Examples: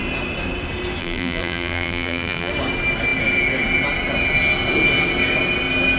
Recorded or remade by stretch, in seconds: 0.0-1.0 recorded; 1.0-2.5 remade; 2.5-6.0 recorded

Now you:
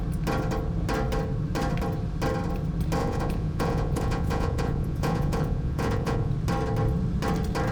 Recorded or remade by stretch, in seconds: 0.0-3.0 recorded; 3.0-6.3 remade; 6.3-7.7 recorded

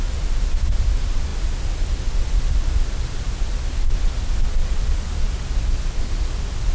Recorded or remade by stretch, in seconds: 0.0-6.7 recorded

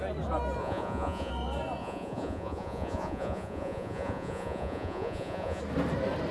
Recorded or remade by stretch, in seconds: 0.0-0.6 recorded; 0.6-1.3 remade; 1.3-1.8 recorded; 1.8-5.6 remade; 5.6-6.3 recorded